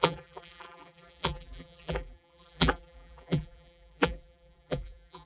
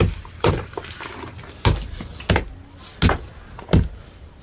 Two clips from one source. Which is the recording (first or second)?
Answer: second